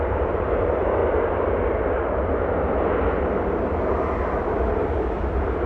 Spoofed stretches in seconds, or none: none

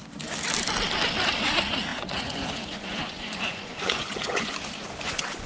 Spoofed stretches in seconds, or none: 1.9-5.5 (vocoder, Vocos)

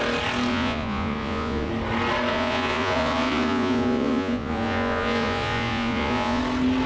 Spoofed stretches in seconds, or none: 0.5-1.7 (vocoder, Vocos); 2.3-6.4

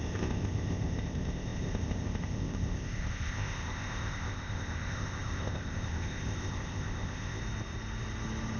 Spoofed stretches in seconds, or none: 0.0-7.4 (codec, ZipCodec)

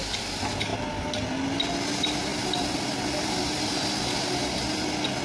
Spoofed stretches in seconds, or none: none